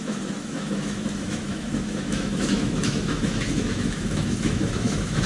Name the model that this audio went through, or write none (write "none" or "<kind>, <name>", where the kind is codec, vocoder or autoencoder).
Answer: autoencoder, DAC-VAE